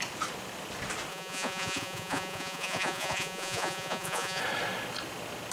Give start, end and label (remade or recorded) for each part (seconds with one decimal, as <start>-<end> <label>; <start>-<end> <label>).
0.0-1.1 recorded; 1.1-4.4 remade; 4.4-5.5 recorded

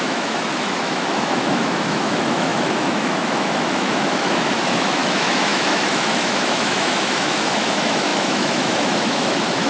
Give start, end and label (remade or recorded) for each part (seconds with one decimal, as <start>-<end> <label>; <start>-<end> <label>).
0.0-9.7 remade

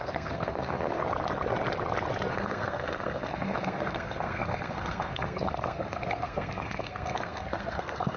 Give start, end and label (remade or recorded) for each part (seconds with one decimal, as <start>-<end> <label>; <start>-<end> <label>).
0.0-1.0 remade; 1.0-2.3 recorded; 2.3-8.2 remade

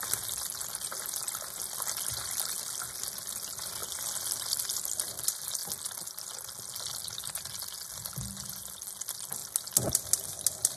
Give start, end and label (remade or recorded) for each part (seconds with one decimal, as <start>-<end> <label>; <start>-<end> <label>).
0.0-10.8 recorded

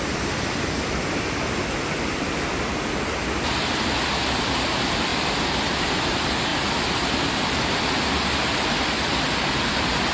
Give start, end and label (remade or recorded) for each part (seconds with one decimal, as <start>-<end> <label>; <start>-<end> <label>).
0.0-10.1 recorded

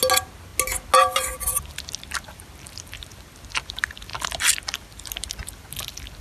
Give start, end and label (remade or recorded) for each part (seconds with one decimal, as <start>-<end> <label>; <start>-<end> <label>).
0.0-6.2 recorded

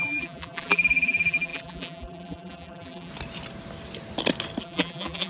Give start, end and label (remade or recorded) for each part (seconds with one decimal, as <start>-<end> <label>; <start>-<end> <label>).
0.0-3.1 remade; 3.1-4.6 recorded; 4.6-5.3 remade